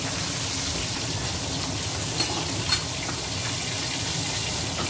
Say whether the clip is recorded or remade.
recorded